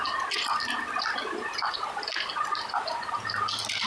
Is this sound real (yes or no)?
yes